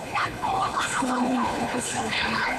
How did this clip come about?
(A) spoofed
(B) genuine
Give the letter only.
A